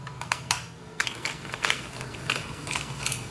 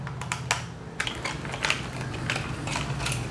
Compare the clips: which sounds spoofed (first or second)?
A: first